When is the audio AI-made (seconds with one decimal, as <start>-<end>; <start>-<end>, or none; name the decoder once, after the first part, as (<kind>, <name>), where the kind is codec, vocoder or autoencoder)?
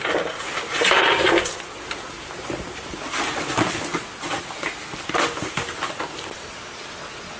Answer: none